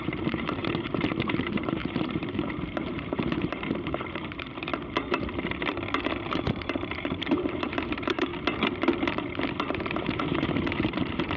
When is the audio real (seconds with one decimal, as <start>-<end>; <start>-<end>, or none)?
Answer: 4.7-6.1; 8.3-9.6